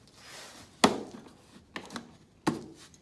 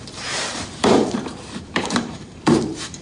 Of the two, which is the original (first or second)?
first